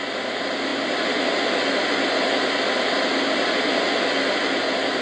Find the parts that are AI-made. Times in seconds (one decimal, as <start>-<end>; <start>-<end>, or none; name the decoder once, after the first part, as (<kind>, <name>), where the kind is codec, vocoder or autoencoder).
none